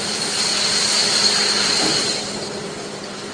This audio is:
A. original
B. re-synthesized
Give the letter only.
A